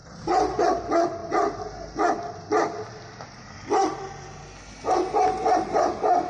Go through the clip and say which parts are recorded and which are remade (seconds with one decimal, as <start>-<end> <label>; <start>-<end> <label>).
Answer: 0.0-0.6 recorded; 0.6-1.2 remade; 1.2-4.7 recorded; 4.7-6.3 remade